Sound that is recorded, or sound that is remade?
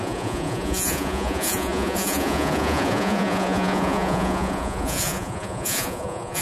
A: remade